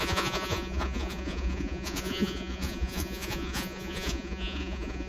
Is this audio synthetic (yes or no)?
yes